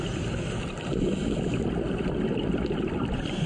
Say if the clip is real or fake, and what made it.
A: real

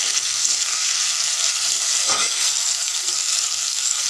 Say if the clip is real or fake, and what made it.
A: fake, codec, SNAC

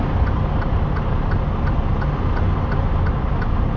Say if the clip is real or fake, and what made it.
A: real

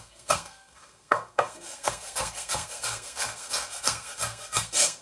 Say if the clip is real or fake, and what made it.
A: fake, codec, SNAC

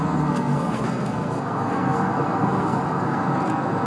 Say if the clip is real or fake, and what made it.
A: fake, codec, SNAC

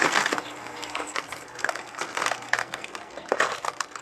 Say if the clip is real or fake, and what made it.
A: fake, codec, SNAC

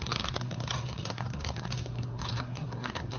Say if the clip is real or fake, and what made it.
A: fake, codec, SNAC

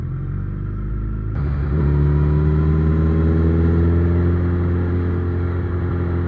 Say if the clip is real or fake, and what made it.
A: real